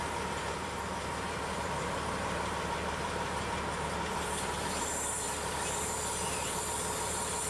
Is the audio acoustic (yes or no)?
no